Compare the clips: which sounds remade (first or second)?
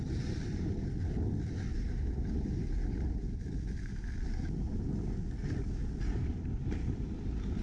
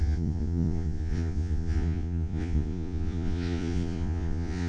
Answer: second